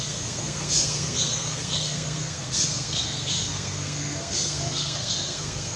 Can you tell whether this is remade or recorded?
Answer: remade